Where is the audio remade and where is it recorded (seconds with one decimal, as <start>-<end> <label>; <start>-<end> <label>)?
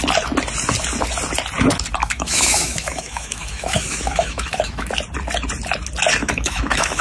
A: 0.0-2.0 recorded; 2.0-4.9 remade; 4.9-6.2 recorded; 6.2-7.0 remade